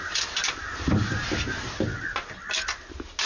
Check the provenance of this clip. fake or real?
real